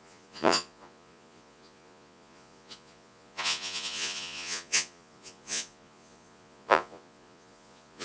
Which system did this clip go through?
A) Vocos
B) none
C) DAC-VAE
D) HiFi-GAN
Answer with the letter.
A